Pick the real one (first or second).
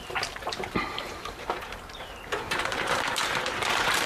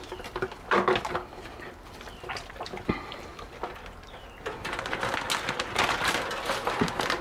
second